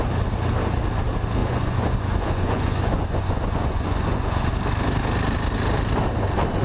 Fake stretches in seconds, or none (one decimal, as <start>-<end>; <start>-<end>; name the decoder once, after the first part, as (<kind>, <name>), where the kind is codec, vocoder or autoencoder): 1.4-4.5 (vocoder, Vocos)